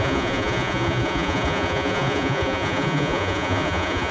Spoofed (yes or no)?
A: yes